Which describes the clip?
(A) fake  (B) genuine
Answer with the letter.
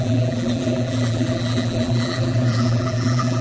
A